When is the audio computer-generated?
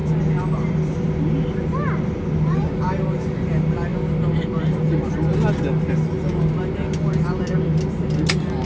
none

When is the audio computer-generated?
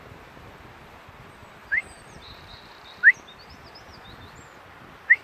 1.6-2.6 (vocoder, BigVGAN v2)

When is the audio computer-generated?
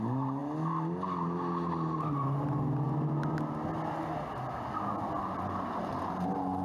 none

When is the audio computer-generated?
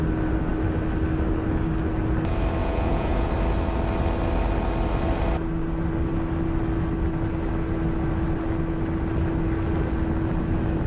2.6-3.3 (vocoder, Vocos)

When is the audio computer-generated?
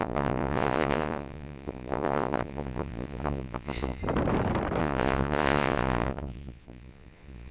0.0-4.0 (vocoder, Vocos); 4.8-7.5